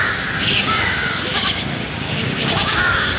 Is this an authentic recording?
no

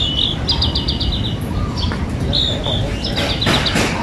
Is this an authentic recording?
yes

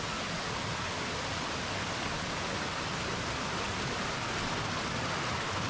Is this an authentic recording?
yes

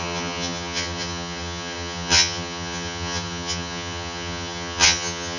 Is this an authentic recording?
no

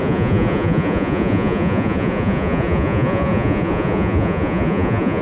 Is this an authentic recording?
no